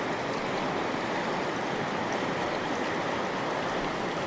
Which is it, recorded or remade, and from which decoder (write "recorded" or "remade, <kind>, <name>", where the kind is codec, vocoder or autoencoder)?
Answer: recorded